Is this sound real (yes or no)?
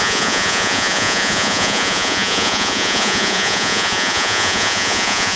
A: no